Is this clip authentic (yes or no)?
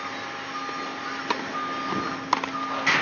yes